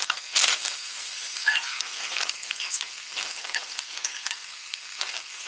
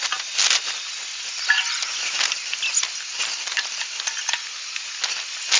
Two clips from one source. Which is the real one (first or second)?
second